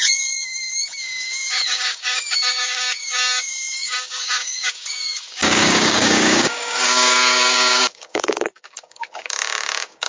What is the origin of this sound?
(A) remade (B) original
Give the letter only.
A